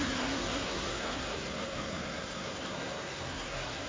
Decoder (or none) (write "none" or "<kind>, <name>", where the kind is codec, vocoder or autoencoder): codec, SNAC